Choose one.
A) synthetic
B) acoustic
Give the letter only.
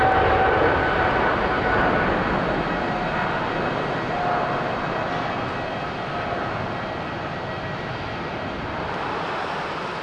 B